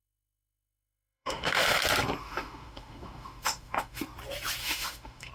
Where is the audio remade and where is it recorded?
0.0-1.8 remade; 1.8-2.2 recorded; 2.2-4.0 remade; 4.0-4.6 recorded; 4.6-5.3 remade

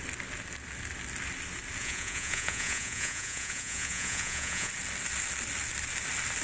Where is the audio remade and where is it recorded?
0.0-1.8 recorded; 1.8-4.7 remade; 4.7-6.4 recorded